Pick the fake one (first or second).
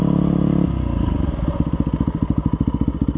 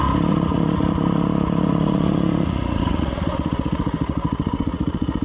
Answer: second